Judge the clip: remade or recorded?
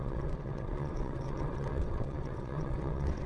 remade